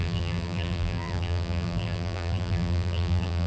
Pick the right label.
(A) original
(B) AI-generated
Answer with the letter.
B